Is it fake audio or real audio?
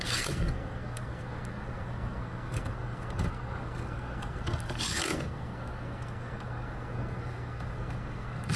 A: fake